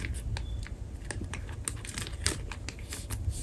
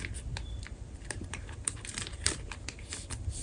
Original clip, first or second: first